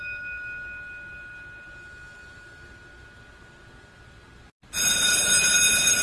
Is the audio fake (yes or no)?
no